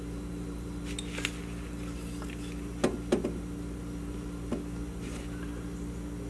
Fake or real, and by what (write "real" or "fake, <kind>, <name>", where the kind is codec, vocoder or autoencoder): real